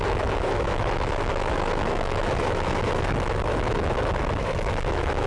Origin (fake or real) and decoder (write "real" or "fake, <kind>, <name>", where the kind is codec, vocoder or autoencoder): fake, autoencoder, DAC-VAE